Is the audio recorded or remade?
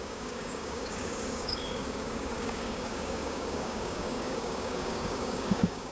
remade